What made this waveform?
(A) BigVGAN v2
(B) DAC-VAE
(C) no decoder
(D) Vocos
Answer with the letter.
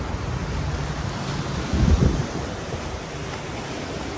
C